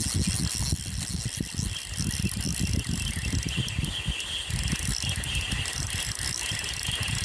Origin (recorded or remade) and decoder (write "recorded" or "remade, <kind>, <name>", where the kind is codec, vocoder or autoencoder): recorded